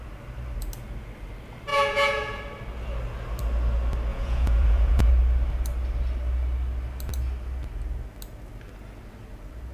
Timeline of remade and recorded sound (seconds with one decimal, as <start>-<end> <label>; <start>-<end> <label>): 0.0-1.7 recorded; 1.7-2.4 remade; 2.4-4.1 recorded; 4.1-5.1 remade; 5.1-9.7 recorded